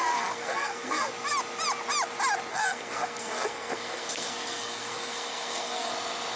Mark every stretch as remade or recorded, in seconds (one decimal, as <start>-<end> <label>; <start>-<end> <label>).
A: 0.0-1.1 remade; 1.1-2.5 recorded; 2.5-5.9 remade; 5.9-6.4 recorded